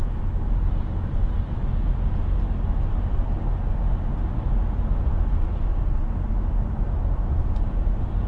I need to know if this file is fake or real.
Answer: real